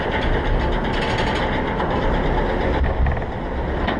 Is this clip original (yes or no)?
yes